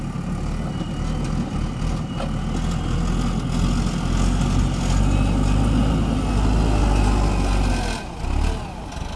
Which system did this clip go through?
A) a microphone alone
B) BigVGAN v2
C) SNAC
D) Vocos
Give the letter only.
A